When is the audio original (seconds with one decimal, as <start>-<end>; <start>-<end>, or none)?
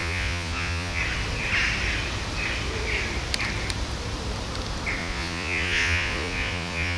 1.0-5.0